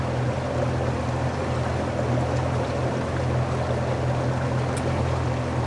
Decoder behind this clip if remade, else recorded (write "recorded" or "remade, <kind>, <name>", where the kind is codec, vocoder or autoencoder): recorded